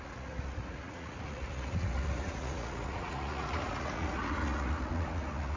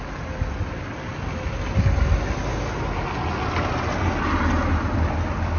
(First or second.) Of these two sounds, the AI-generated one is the first